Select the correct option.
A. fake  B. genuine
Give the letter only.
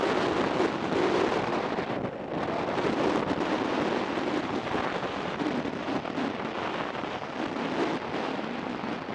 B